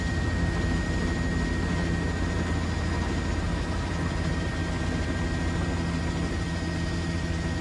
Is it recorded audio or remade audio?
recorded